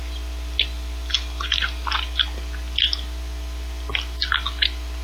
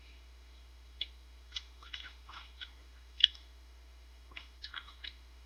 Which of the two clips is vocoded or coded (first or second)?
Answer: second